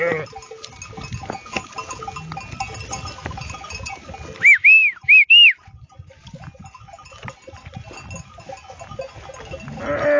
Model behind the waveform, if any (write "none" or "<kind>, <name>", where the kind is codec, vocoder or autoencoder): none